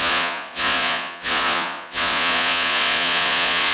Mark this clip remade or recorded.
remade